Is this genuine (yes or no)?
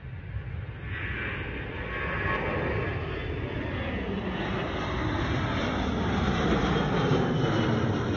yes